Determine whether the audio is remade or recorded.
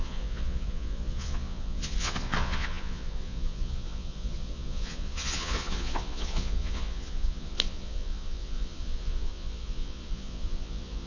remade